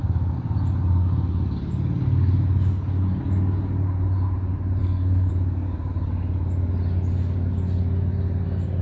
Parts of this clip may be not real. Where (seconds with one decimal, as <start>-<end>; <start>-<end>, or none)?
4.8-5.3